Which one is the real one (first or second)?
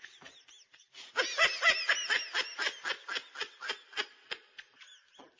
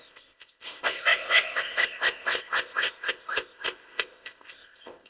first